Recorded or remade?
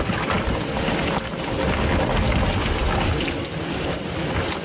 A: recorded